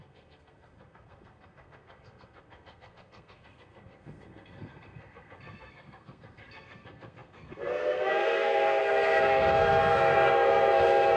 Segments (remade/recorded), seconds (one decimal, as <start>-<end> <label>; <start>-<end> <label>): 0.0-11.2 remade

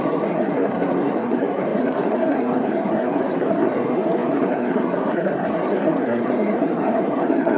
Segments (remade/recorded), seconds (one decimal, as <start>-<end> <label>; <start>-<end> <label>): 0.0-7.6 remade

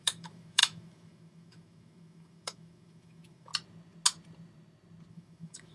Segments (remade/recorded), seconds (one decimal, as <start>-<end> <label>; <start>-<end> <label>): 0.0-3.5 remade; 3.5-5.1 recorded; 5.1-5.7 remade